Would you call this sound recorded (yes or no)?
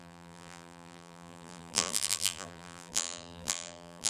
no